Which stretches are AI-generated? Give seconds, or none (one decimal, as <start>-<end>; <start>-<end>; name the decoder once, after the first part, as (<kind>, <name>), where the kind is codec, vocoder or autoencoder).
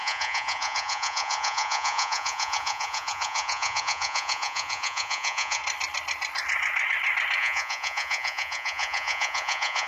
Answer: 0.0-5.6 (vocoder, Vocos); 7.4-9.9